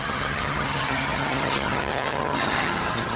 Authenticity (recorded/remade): remade